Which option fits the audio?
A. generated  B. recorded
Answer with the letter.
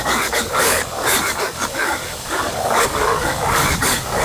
A